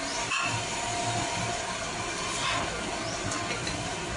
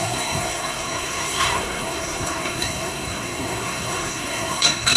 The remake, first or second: second